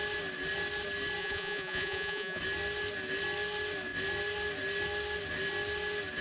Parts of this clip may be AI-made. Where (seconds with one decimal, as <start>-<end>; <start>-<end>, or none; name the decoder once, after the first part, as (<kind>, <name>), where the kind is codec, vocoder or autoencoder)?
1.2-2.4 (vocoder, Vocos)